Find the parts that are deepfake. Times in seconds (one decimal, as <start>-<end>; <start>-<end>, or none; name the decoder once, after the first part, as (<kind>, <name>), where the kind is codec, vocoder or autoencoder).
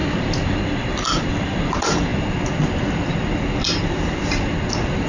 none